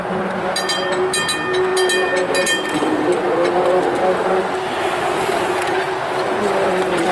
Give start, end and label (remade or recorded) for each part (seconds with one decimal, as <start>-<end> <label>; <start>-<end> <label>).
0.0-7.1 recorded